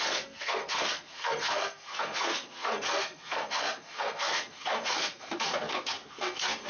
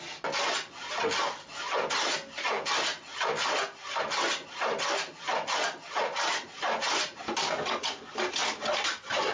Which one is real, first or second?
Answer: second